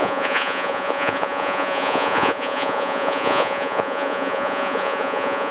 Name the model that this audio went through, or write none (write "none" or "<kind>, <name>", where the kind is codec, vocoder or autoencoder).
vocoder, Vocos